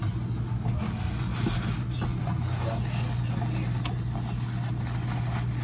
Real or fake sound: real